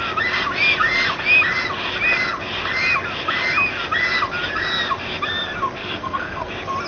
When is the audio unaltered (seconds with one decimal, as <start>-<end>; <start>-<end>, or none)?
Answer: 0.0-5.8; 6.5-6.9